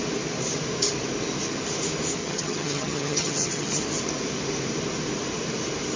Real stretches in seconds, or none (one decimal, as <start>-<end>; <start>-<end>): 0.0-2.2; 3.8-6.0